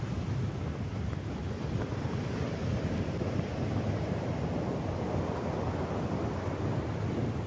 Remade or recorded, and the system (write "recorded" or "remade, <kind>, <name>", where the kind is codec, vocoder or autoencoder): recorded